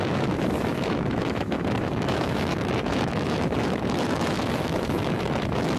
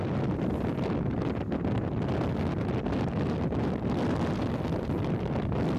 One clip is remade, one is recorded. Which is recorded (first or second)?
second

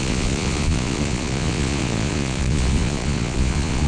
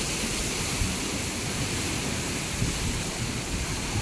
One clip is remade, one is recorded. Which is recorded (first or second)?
second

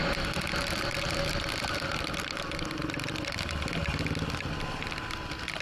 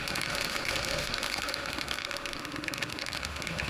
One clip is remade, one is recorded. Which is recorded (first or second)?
first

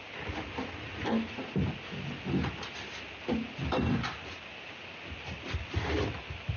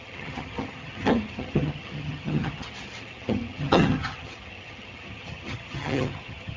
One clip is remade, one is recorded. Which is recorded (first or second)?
first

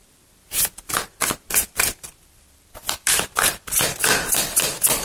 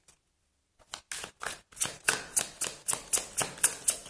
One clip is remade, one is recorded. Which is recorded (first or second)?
second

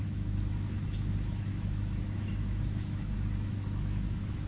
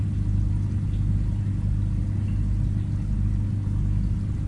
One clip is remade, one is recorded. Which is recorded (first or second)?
second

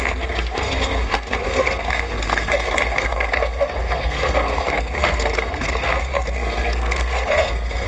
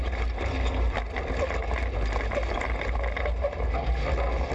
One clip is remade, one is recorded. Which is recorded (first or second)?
second